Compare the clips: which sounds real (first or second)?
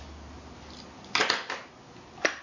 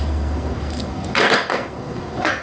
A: first